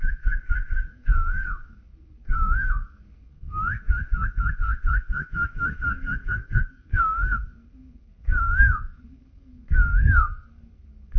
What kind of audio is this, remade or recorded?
remade